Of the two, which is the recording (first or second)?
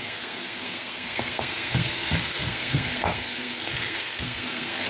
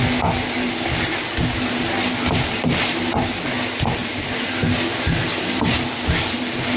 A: second